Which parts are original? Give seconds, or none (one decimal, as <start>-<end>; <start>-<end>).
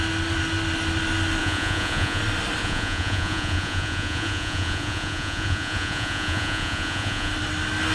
0.0-1.4; 2.2-2.6; 7.3-7.9